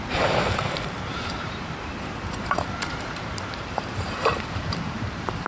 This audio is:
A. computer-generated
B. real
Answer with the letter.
A